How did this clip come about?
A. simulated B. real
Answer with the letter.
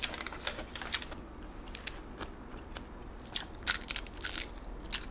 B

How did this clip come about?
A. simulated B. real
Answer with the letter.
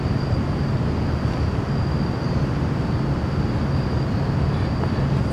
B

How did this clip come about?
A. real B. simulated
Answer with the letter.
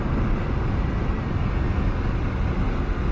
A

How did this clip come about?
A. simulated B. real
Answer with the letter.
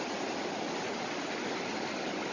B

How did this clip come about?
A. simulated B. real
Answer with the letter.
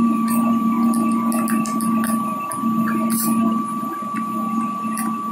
B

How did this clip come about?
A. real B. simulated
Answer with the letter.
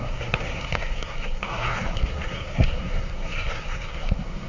B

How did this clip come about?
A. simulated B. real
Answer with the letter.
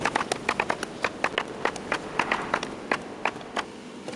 B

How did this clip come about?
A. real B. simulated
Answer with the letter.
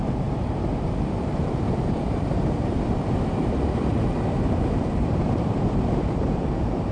B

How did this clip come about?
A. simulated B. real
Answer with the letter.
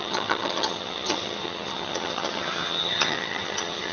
A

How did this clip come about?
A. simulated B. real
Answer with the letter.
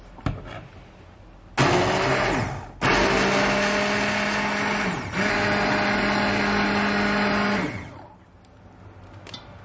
B